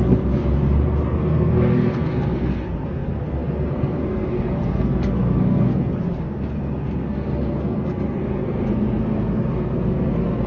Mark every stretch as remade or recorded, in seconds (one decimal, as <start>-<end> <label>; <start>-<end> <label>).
0.0-0.4 remade; 0.4-1.0 recorded; 1.0-10.5 remade